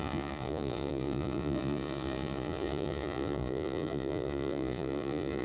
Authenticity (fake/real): fake